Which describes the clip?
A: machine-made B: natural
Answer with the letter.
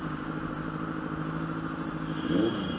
B